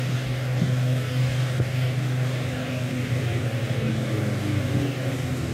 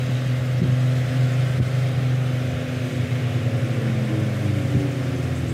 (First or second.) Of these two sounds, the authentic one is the second